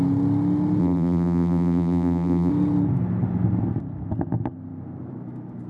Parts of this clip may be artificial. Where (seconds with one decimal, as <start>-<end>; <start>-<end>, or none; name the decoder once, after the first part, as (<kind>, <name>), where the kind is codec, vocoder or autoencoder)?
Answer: 0.8-2.5 (vocoder, BigVGAN v2)